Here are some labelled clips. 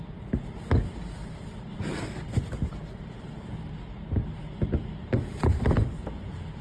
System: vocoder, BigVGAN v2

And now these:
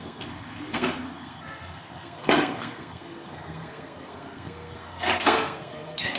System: codec, SNAC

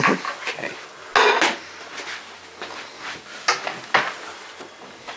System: none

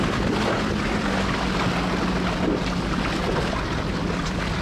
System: none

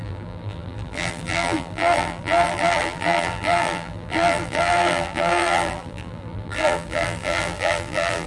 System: vocoder, BigVGAN v2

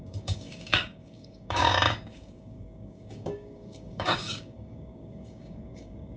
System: codec, DAC